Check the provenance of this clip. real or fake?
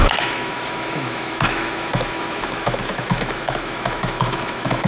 fake